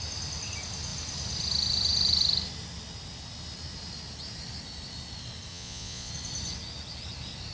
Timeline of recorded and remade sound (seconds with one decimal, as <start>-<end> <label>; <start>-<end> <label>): 0.0-5.5 recorded; 5.5-6.1 remade; 6.1-7.5 recorded